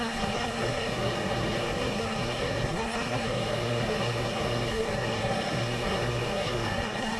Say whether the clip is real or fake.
fake